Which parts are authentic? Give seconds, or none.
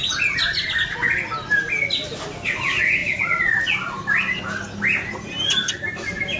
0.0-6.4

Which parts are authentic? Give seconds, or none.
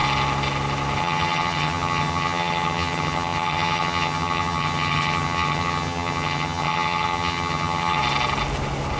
0.0-1.0; 8.0-9.0